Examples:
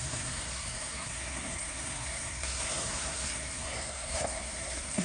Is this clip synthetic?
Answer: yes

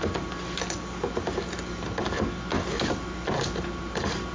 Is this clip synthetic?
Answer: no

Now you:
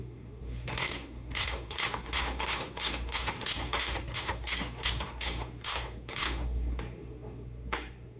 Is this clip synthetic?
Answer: yes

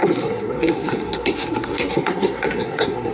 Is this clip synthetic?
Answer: yes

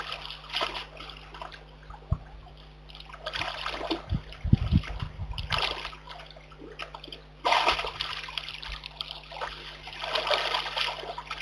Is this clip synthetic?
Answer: no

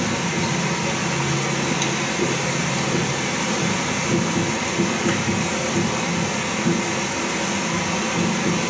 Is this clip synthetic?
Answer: no